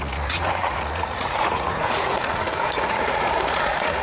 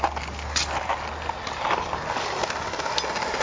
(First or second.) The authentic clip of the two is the second